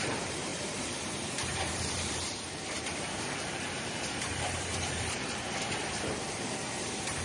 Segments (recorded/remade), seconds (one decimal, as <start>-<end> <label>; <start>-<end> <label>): 0.0-7.2 remade